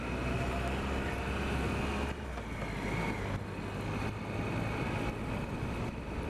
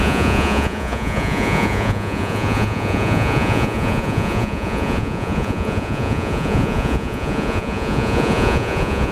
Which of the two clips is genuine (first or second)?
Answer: first